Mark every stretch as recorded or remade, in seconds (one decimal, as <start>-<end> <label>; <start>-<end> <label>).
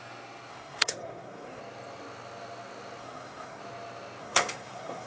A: 0.0-0.5 recorded; 0.5-1.6 remade; 1.6-3.0 recorded; 3.0-3.6 remade; 3.6-4.2 recorded; 4.2-5.1 remade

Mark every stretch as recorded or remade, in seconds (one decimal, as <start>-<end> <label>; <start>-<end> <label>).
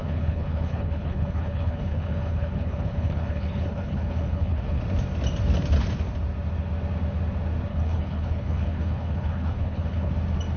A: 0.0-4.8 remade; 4.8-7.7 recorded; 7.7-10.1 remade; 10.1-10.6 recorded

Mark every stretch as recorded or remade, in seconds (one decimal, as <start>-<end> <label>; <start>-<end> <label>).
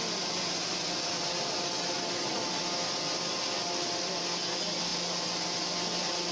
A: 0.0-6.3 recorded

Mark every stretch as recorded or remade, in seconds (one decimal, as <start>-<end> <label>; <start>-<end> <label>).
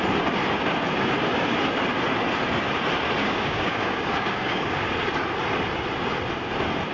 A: 0.0-3.2 recorded; 3.2-4.9 remade; 4.9-6.9 recorded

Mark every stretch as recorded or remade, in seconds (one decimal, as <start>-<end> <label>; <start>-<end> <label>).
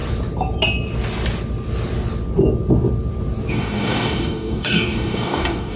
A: 0.0-3.5 recorded; 3.5-5.8 remade